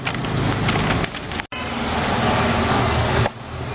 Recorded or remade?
recorded